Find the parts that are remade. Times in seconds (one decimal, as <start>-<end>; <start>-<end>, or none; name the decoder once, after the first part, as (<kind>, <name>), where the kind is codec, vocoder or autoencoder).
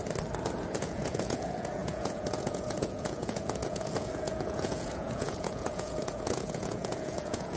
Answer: 0.8-7.6 (vocoder, Vocos)